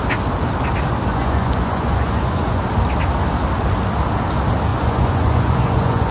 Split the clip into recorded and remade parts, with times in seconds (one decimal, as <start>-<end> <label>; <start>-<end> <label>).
0.0-1.1 recorded; 1.1-2.6 remade; 2.6-4.7 recorded; 4.7-6.1 remade